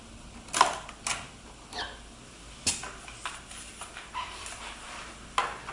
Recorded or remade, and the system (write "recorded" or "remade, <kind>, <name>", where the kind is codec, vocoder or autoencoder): recorded